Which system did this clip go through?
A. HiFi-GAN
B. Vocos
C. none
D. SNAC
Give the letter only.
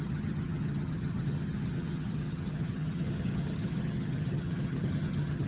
A